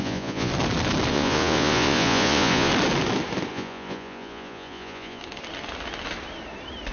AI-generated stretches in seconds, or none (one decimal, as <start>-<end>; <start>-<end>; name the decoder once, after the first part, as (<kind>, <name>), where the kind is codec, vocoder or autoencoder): 0.0-0.5 (vocoder, Vocos); 1.1-2.7; 3.5-5.2